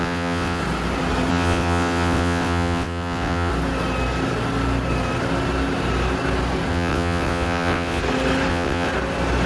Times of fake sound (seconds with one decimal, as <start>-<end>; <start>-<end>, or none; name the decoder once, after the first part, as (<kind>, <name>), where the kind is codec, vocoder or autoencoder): 0.0-0.6 (vocoder, WaveNeXt); 1.3-3.5; 6.7-8.0; 8.5-8.9